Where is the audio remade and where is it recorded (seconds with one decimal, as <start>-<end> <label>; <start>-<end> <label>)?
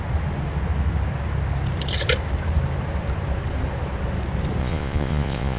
0.0-4.6 recorded; 4.6-5.6 remade